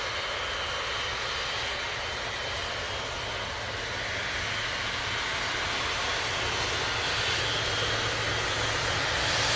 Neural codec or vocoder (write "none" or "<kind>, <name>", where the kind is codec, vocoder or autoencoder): none